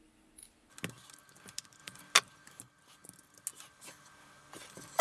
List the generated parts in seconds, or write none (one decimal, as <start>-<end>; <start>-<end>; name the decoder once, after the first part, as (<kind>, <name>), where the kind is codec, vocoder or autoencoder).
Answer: none